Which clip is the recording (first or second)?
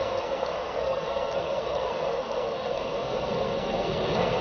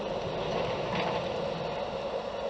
second